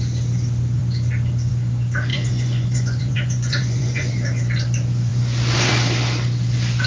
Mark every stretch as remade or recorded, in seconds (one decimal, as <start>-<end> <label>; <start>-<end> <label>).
0.0-2.1 recorded; 2.1-4.1 remade; 4.1-6.9 recorded